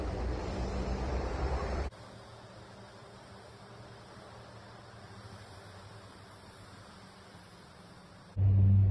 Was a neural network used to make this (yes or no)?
no